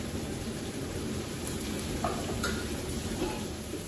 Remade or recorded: remade